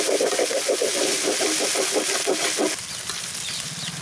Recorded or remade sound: recorded